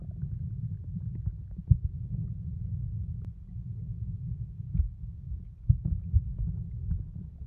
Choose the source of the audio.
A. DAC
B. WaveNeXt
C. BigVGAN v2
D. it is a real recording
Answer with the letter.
D